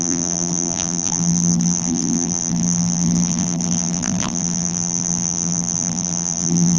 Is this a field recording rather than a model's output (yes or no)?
no